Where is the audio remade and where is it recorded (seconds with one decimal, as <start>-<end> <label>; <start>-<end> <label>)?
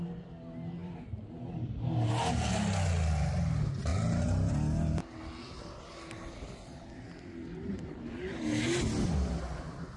0.0-10.0 recorded